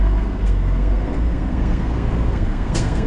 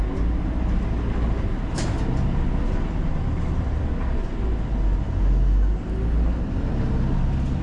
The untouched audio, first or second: second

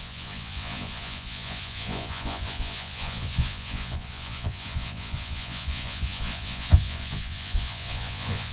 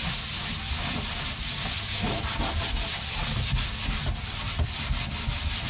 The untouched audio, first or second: second